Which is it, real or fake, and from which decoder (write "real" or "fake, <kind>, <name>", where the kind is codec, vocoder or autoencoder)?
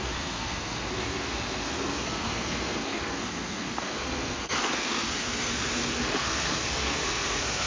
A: fake, codec, SNAC